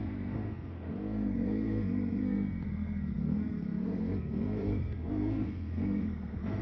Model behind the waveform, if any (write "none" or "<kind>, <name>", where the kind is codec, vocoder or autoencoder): codec, SNAC